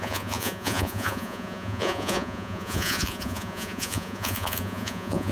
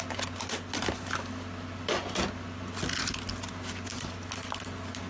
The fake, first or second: first